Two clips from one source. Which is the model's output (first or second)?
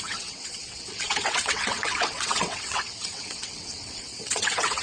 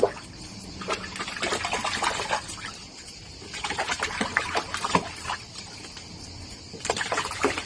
first